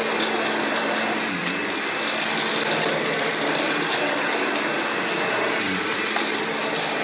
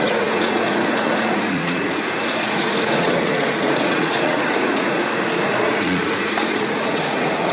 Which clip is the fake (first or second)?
second